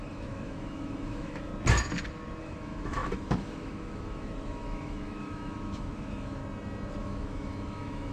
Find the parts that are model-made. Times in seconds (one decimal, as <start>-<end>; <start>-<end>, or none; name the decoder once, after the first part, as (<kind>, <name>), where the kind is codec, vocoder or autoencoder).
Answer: 0.0-1.5 (autoencoder, DAC-VAE); 2.4-6.4; 7.0-8.1